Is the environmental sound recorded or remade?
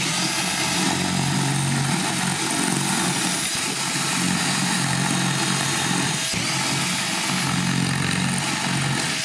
recorded